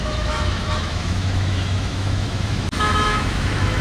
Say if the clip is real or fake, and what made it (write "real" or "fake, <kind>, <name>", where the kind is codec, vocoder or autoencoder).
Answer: fake, autoencoder, DAC-VAE